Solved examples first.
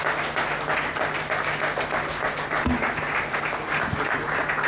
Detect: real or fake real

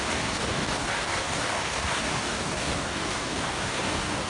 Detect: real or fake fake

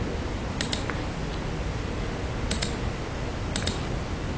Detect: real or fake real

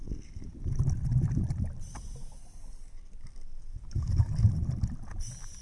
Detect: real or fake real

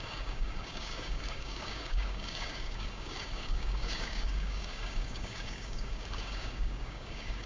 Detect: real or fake fake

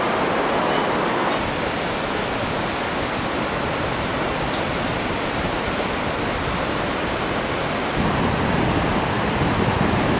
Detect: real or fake real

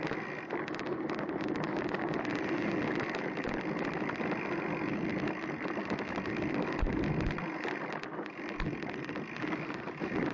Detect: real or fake real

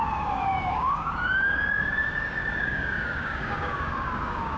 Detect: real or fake fake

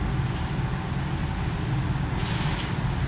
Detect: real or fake real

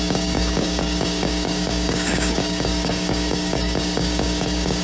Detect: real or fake fake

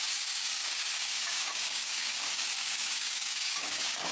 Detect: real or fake fake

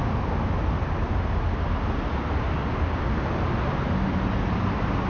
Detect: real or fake real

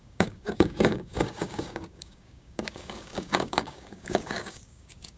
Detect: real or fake fake